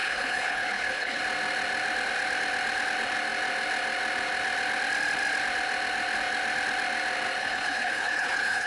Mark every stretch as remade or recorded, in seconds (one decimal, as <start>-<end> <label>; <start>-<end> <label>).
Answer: 0.0-1.2 remade; 1.2-7.4 recorded; 7.4-8.7 remade